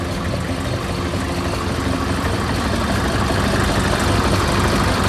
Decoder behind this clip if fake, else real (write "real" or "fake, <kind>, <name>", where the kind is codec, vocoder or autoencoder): real